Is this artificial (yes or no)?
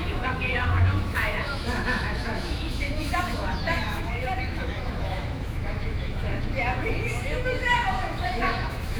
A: yes